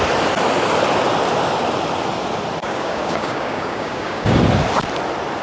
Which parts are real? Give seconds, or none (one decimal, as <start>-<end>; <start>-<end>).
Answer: 0.0-2.6; 4.4-5.4